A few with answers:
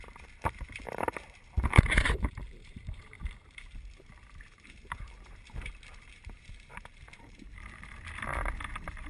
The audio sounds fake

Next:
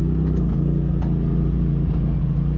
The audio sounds real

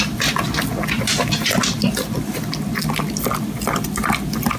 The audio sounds real